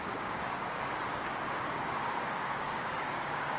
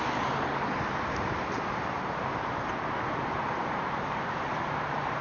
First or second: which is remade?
first